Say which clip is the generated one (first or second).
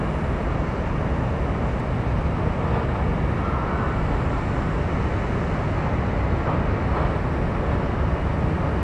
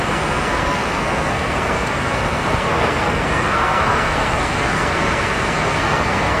second